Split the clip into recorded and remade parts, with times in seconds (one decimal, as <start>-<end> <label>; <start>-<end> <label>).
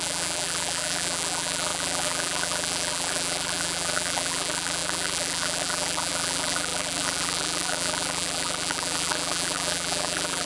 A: 0.0-10.5 remade